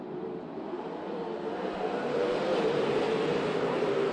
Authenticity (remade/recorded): remade